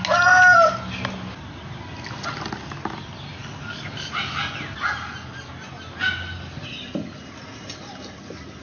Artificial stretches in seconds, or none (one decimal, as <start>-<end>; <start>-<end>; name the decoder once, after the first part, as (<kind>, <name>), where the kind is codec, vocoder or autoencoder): none